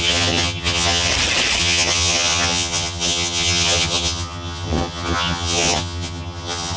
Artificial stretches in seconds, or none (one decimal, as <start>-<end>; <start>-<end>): 0.0-1.1; 1.6-6.8